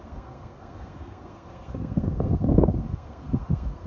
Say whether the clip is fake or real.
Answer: fake